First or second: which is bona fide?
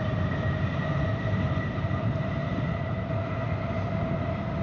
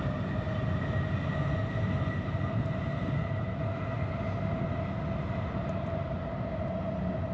second